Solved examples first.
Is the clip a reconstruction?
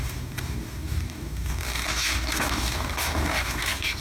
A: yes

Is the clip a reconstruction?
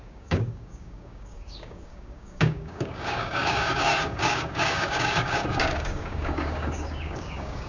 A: yes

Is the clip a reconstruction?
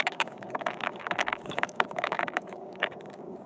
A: yes